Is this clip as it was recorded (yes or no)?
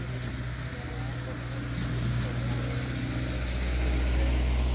yes